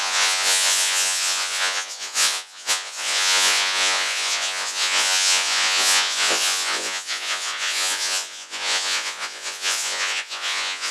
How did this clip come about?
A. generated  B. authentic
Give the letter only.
A